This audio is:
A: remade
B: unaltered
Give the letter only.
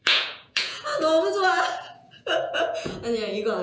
A